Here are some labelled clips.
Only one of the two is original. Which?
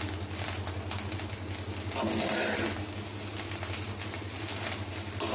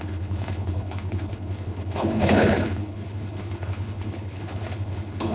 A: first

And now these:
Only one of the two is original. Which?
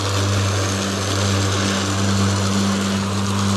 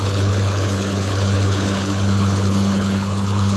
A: first